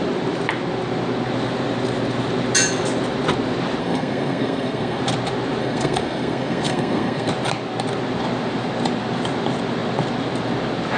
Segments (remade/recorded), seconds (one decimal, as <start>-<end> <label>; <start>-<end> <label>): 0.0-3.8 recorded; 3.8-5.0 remade; 5.0-5.6 recorded; 5.6-7.3 remade; 7.3-11.0 recorded